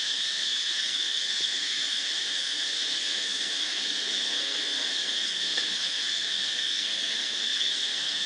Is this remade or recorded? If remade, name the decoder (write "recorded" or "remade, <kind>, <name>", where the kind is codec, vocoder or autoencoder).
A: remade, codec, SNAC